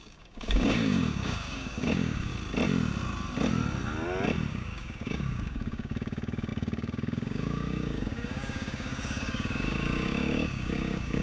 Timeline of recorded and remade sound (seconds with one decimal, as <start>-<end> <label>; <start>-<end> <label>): 0.0-2.3 remade; 2.3-4.5 recorded; 4.5-11.2 remade